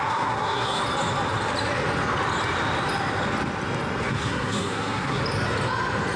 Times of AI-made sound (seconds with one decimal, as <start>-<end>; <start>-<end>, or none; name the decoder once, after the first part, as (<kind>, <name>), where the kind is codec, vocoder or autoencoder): 0.0-0.8 (codec, SNAC); 4.1-5.2